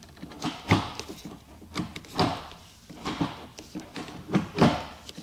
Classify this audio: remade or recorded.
recorded